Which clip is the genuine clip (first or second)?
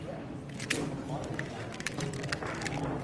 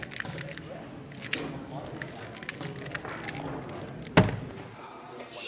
second